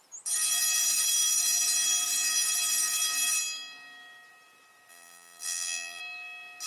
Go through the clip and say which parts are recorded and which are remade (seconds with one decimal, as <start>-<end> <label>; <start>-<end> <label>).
0.0-4.9 recorded; 4.9-6.0 remade; 6.0-6.7 recorded